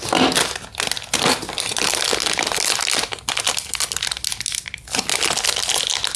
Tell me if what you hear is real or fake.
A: real